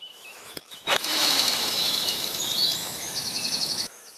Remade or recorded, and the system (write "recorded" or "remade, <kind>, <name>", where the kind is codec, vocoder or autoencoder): remade, autoencoder, DAC-VAE